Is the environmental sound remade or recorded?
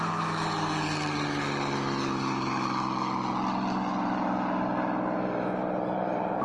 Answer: recorded